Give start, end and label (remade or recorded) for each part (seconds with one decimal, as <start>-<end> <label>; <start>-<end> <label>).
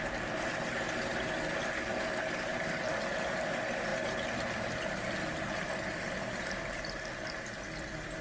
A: 0.0-8.2 recorded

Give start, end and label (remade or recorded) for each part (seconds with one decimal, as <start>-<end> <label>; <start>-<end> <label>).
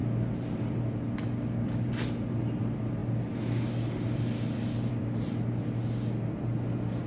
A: 0.0-7.1 recorded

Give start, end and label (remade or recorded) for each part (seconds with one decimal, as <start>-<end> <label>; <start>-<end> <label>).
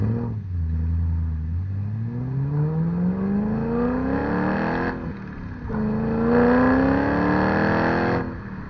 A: 0.0-8.7 recorded